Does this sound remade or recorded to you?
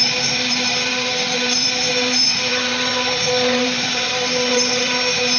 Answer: remade